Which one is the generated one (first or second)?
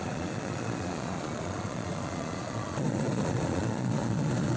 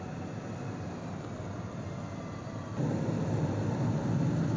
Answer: first